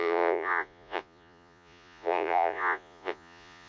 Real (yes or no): no